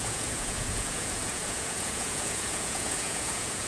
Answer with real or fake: fake